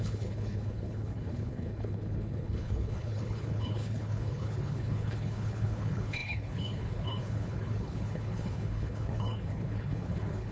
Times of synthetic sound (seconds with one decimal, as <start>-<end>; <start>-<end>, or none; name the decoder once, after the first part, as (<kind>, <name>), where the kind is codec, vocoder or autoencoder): 0.0-10.5 (codec, HILCodec)